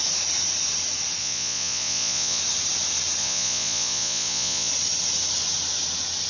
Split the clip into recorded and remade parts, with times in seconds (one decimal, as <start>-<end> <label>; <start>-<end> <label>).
0.0-1.2 recorded; 1.2-2.4 remade; 2.4-3.2 recorded; 3.2-4.7 remade; 4.7-6.3 recorded